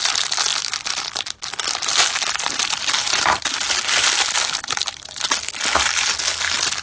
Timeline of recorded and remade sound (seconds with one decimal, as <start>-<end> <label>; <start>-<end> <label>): 0.0-6.8 recorded